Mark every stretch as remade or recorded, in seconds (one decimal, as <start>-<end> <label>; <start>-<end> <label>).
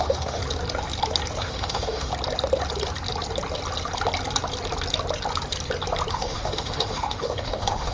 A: 0.0-0.4 remade; 0.4-1.4 recorded; 1.4-2.1 remade; 2.1-6.1 recorded; 6.1-7.9 remade